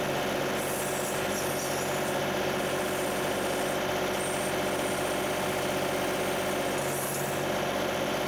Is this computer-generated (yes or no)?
no